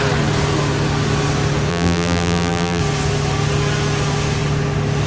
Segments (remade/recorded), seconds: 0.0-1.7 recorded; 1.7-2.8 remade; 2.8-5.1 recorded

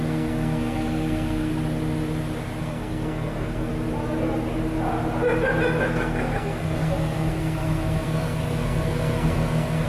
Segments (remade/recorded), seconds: 0.0-1.5 remade; 1.5-2.6 recorded; 2.6-3.7 remade; 3.7-5.8 recorded; 5.8-9.9 remade

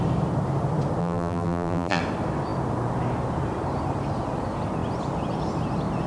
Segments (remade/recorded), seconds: 0.0-1.0 recorded; 1.0-2.0 remade; 2.0-6.1 recorded

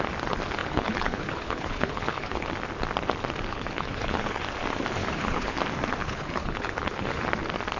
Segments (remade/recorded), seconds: 0.0-0.6 recorded; 0.6-2.5 remade; 2.5-3.5 recorded; 3.5-4.4 remade; 4.4-5.0 recorded; 5.0-5.6 remade; 5.6-6.0 recorded; 6.0-7.3 remade; 7.3-7.8 recorded

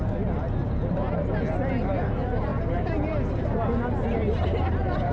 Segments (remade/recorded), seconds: 0.0-5.1 recorded

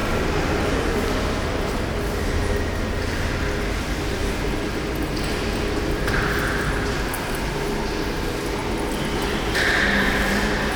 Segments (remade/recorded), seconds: 0.0-0.8 remade; 0.8-10.8 recorded

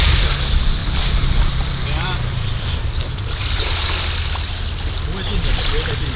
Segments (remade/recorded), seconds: 0.0-0.8 recorded; 0.8-4.5 remade; 4.5-5.3 recorded; 5.3-6.2 remade

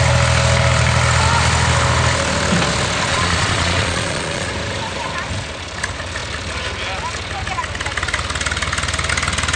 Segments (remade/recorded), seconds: 0.0-3.1 recorded; 3.1-4.5 remade; 4.5-9.6 recorded